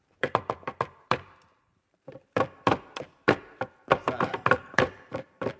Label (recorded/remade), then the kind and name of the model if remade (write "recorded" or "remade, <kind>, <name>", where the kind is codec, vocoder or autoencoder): remade, vocoder, BigVGAN v2